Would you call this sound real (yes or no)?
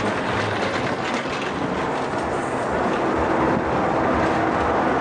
yes